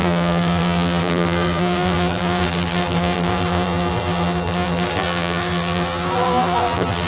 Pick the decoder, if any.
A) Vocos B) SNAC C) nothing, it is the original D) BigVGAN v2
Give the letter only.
D